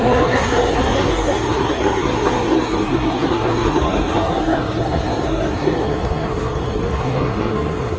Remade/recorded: remade